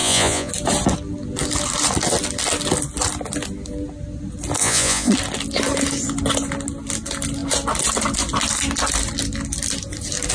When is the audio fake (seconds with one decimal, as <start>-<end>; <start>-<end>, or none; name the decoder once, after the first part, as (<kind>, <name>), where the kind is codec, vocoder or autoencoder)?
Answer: 0.0-0.5 (vocoder, Vocos); 4.6-5.1